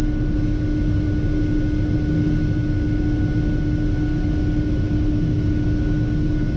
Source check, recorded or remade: recorded